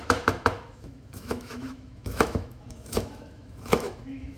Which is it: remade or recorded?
remade